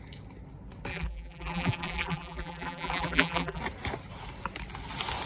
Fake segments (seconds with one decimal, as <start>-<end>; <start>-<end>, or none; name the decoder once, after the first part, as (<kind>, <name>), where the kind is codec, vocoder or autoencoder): 0.9-3.6 (vocoder, BigVGAN v2)